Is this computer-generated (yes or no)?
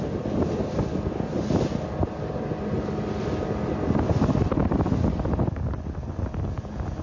no